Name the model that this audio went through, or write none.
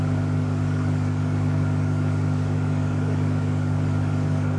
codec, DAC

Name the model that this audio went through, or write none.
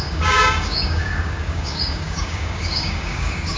codec, DAC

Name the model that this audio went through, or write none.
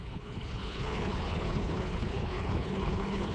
codec, HILCodec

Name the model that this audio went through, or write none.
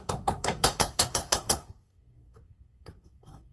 codec, SNAC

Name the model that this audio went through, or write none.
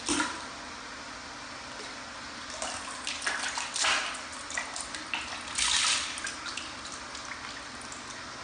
none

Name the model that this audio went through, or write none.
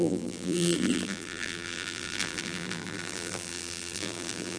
vocoder, BigVGAN v2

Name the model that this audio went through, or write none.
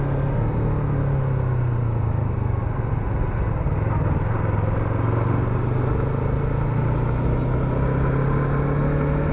none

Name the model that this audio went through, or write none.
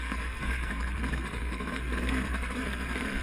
codec, SNAC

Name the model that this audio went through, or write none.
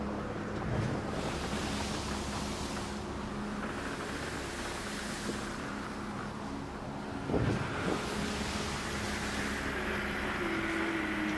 none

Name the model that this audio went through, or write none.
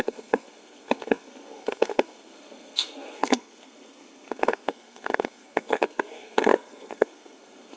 codec, SNAC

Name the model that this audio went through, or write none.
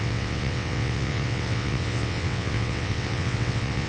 vocoder, WaveNeXt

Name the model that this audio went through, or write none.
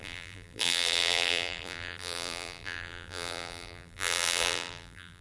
vocoder, BigVGAN v2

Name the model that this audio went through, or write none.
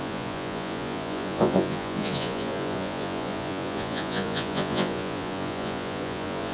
vocoder, Vocos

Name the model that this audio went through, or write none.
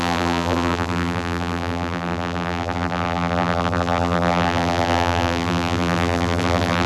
vocoder, BigVGAN v2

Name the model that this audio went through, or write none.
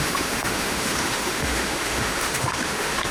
autoencoder, DAC-VAE